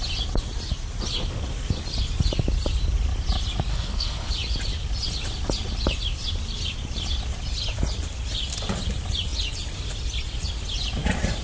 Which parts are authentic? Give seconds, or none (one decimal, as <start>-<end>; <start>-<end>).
0.0-3.7; 4.3-11.4